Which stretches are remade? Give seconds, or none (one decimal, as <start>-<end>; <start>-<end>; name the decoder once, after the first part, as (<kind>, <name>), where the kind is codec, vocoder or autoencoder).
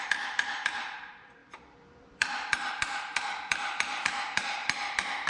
0.0-5.3 (vocoder, BigVGAN v2)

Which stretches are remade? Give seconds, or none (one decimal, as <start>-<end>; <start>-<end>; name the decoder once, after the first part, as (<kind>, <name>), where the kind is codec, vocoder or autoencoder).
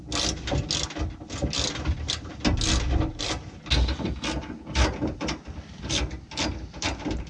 none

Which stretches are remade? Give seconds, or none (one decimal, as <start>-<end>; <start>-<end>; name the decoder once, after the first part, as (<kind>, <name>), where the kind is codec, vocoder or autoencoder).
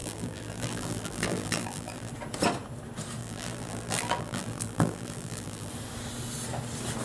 0.0-2.1 (vocoder, BigVGAN v2); 3.2-5.7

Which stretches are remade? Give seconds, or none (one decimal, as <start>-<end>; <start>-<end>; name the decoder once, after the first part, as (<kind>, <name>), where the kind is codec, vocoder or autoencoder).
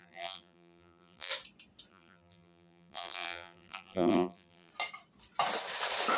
0.0-1.3 (vocoder, BigVGAN v2); 1.9-4.7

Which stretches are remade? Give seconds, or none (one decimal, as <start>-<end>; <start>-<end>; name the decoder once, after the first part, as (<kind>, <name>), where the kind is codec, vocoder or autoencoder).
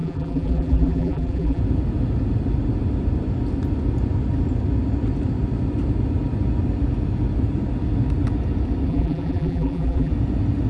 0.0-1.6 (vocoder, BigVGAN v2); 8.9-10.1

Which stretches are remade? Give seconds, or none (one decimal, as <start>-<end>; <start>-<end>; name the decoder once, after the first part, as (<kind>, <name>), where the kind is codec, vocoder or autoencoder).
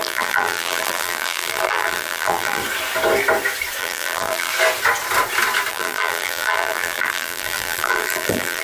0.0-2.6 (vocoder, BigVGAN v2); 3.8-4.5; 5.7-8.6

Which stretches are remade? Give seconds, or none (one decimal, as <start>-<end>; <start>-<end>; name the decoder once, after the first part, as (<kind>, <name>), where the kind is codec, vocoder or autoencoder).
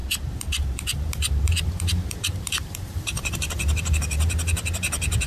0.0-5.3 (vocoder, BigVGAN v2)